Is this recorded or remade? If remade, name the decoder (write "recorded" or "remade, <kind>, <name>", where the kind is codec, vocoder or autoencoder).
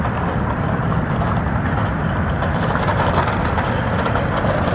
recorded